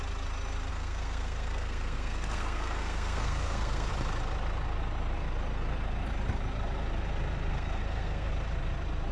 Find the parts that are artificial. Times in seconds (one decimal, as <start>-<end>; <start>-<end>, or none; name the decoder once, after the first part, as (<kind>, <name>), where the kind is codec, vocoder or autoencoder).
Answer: 0.7-3.9 (codec, SNAC); 7.5-8.3